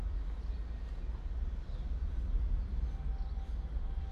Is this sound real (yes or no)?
yes